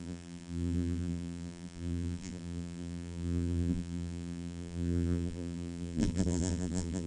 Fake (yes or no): yes